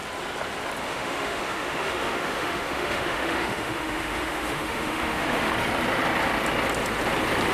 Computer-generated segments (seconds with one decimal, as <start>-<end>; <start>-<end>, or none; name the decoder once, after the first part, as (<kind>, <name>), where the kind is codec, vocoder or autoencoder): 0.8-5.5 (autoencoder, DAC-VAE)